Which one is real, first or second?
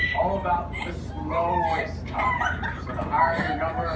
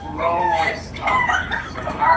first